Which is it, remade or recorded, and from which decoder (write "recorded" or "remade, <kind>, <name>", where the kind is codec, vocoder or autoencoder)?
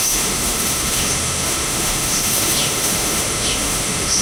remade, autoencoder, DAC-VAE